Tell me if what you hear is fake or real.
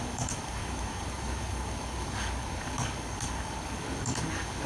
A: fake